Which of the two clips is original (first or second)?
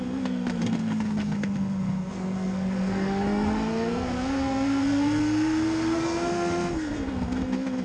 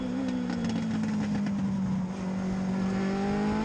second